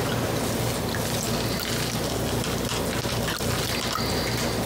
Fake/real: real